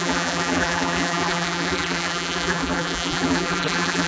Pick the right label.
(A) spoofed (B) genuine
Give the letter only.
A